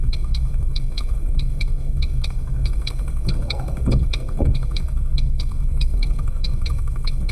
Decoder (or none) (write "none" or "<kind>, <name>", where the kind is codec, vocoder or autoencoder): codec, SNAC